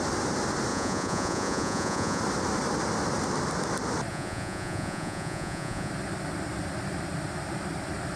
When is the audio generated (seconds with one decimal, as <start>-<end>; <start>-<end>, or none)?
0.7-2.2; 4.1-5.9